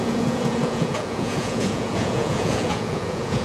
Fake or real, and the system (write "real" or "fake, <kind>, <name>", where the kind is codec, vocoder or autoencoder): fake, vocoder, Vocos